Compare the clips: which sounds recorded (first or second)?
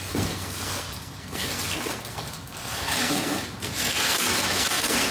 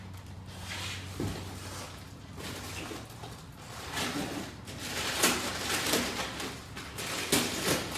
second